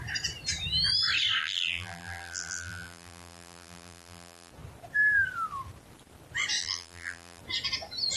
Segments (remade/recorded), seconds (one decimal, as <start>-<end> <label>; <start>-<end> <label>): 0.0-1.4 recorded; 1.4-4.5 remade; 4.5-6.6 recorded; 6.6-7.4 remade; 7.4-8.2 recorded